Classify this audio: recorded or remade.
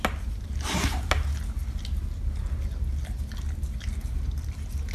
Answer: recorded